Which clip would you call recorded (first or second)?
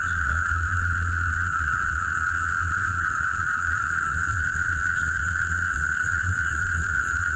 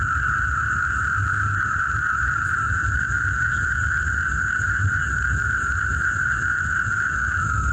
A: second